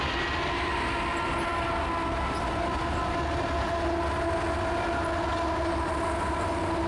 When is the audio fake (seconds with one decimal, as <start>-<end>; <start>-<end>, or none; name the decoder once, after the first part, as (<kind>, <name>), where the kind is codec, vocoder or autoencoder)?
none